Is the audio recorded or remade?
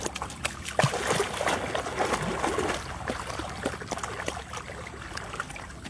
recorded